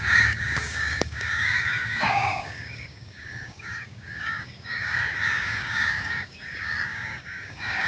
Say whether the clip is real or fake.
fake